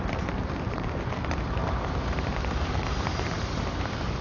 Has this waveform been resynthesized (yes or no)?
yes